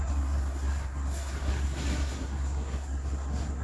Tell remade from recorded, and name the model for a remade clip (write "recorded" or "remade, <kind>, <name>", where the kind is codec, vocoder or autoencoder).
remade, codec, SNAC